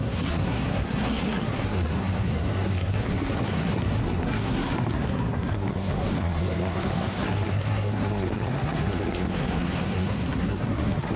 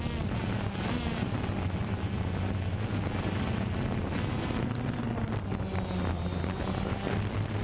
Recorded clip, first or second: second